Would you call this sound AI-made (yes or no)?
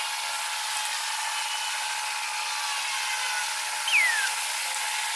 no